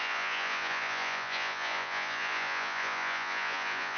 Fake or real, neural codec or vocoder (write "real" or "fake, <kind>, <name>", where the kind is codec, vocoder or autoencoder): fake, vocoder, Vocos